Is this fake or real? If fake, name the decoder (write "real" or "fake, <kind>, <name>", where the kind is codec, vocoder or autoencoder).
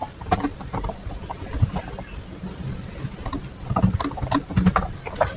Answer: real